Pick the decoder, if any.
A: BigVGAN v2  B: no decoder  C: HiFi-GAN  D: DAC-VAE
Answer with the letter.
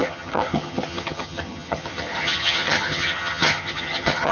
C